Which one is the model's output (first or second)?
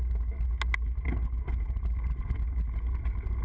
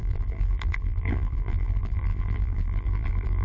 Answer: second